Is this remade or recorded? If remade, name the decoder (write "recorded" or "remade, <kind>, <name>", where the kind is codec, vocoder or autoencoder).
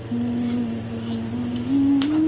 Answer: recorded